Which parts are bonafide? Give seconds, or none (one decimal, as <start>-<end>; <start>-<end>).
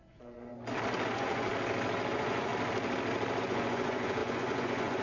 0.5-1.1; 1.5-2.1; 2.5-3.4